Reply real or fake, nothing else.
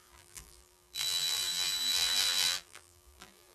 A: fake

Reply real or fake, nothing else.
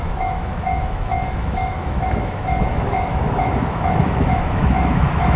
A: fake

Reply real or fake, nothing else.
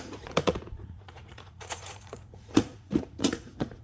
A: fake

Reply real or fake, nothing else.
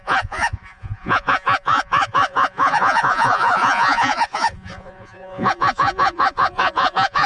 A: fake